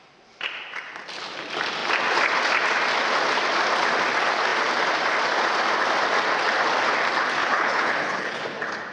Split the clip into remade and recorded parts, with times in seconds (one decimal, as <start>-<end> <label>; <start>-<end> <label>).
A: 0.0-7.4 recorded; 7.4-8.4 remade; 8.4-8.9 recorded